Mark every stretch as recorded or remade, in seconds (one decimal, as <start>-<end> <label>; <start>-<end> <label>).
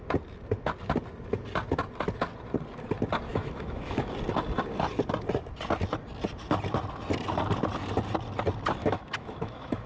0.0-3.3 recorded; 3.3-4.1 remade; 4.1-8.8 recorded; 8.8-9.9 remade